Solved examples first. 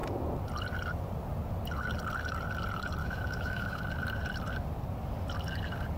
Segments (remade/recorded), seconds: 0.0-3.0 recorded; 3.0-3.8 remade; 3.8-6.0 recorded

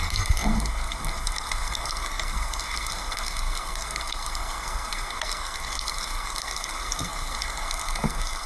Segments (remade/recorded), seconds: 0.0-8.5 remade

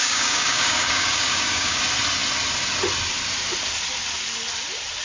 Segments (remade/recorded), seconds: 0.0-1.8 remade; 1.8-5.0 recorded

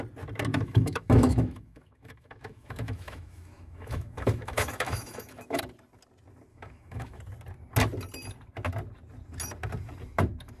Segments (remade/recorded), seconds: 0.0-0.5 recorded; 0.5-5.6 remade; 5.6-6.5 recorded; 6.5-7.2 remade; 7.2-10.6 recorded

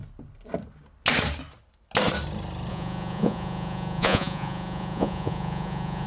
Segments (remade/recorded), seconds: 0.0-2.7 recorded; 2.7-6.1 remade

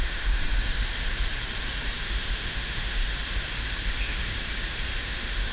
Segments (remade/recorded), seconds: 0.0-1.0 remade; 1.0-2.1 recorded; 2.1-3.0 remade; 3.0-3.9 recorded; 3.9-4.3 remade; 4.3-5.0 recorded; 5.0-5.5 remade

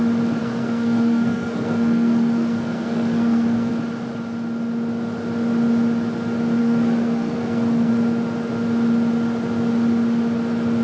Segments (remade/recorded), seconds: 0.0-0.4 recorded; 0.4-3.7 remade; 3.7-6.6 recorded; 6.6-7.9 remade; 7.9-10.8 recorded

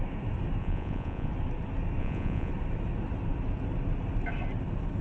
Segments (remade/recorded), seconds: 0.0-0.6 recorded; 0.6-1.3 remade; 1.3-2.0 recorded; 2.0-2.5 remade; 2.5-5.0 recorded